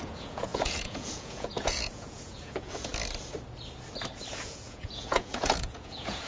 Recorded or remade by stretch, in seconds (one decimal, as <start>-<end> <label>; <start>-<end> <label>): 0.0-2.9 remade; 2.9-4.4 recorded; 4.4-6.3 remade